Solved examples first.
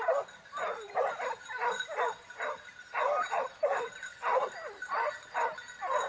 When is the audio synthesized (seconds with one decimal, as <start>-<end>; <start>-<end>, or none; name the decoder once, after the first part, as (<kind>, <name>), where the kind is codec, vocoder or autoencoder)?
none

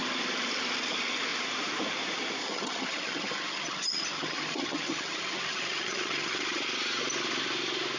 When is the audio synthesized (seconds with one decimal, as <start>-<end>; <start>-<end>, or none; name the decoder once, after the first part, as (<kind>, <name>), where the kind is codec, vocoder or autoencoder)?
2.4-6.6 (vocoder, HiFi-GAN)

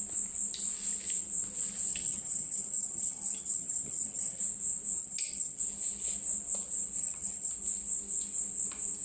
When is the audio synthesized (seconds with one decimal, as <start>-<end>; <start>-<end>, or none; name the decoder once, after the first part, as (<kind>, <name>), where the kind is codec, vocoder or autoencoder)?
1.9-4.4 (vocoder, HiFi-GAN); 5.0-5.6; 7.0-7.5

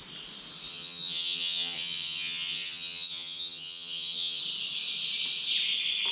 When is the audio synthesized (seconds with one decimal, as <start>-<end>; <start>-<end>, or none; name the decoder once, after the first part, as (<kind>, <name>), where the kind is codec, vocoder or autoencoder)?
0.7-4.4 (vocoder, HiFi-GAN)

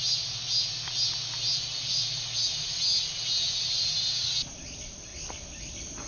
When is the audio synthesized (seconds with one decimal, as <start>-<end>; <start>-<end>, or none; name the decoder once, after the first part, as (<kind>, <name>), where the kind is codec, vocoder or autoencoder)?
none

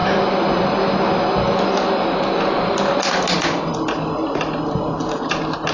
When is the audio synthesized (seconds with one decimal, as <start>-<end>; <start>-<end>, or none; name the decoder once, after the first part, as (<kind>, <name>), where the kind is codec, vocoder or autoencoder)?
none

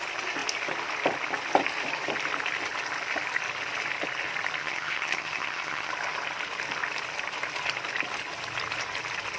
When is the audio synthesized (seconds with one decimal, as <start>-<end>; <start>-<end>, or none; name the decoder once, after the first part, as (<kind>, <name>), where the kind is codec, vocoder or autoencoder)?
4.6-5.9 (vocoder, HiFi-GAN)

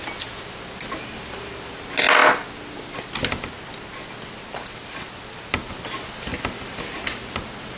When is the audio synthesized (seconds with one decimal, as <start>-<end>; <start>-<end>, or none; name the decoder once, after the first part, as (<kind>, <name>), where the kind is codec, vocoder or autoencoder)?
none